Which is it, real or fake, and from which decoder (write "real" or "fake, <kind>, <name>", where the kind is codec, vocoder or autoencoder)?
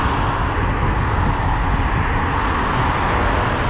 real